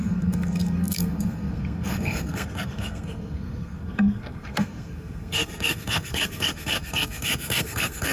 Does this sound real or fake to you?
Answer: fake